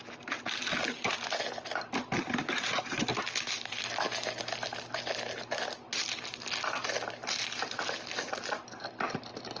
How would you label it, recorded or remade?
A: recorded